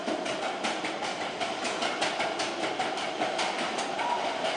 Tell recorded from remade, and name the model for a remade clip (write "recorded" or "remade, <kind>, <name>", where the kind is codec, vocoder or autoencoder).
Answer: recorded